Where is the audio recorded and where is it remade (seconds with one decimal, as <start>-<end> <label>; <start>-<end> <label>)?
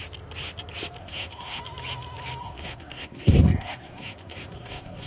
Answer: 0.0-1.0 recorded; 1.0-1.6 remade; 1.6-2.4 recorded; 2.4-5.1 remade